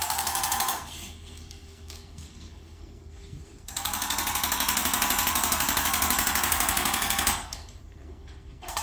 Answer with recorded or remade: remade